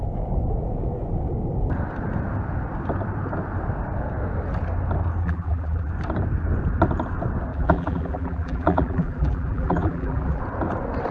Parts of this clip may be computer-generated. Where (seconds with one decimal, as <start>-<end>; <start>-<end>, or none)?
5.2-5.9; 7.5-10.4